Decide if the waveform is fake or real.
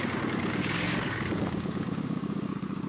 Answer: fake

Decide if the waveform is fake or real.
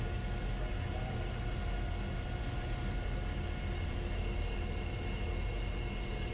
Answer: real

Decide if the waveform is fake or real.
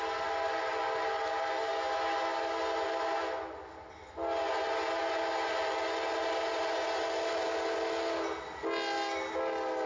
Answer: real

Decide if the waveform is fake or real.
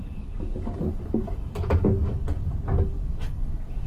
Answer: fake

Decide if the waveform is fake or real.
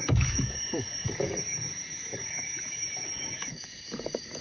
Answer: fake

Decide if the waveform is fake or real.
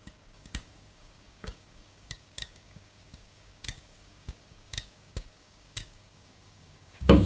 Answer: fake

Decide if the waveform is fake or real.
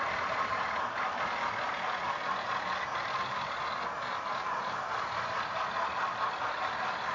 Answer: real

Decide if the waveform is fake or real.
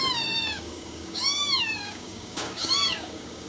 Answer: fake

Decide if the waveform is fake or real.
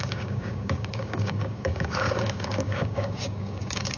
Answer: fake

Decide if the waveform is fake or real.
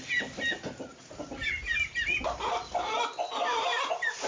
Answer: real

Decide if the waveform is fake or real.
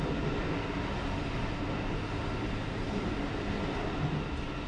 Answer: real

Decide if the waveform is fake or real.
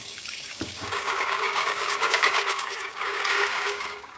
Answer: fake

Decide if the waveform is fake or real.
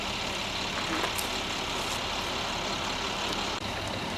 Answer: real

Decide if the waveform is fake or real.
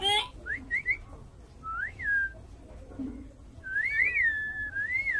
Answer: real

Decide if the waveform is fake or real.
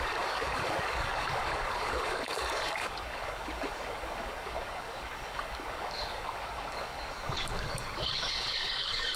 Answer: fake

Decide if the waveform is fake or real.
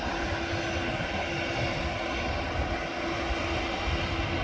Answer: real